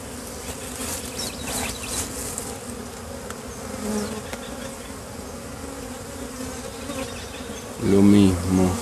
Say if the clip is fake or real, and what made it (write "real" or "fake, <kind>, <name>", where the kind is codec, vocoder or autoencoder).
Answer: real